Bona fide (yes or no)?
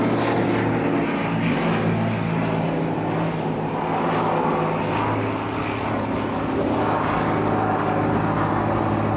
yes